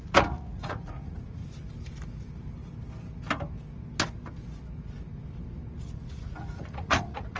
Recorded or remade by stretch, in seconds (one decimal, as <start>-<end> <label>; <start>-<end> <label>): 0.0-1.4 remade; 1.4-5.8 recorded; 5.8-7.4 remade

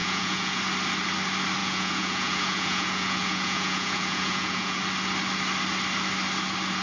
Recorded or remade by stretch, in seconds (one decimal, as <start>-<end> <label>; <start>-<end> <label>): 0.0-0.6 remade; 0.6-1.6 recorded; 1.6-4.8 remade; 4.8-6.8 recorded

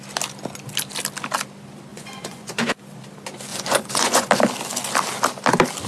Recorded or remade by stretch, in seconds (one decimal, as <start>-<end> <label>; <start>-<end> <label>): 0.0-1.9 recorded; 1.9-2.7 remade; 2.7-3.5 recorded; 3.5-4.3 remade; 4.3-5.9 recorded